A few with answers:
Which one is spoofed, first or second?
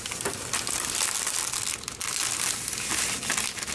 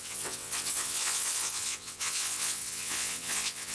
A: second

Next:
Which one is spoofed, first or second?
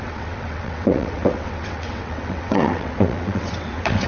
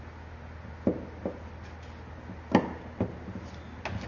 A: first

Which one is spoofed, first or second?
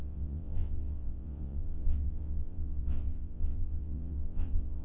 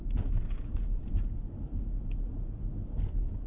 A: first